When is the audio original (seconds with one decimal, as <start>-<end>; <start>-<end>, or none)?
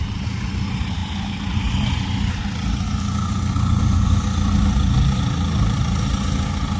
0.0-6.8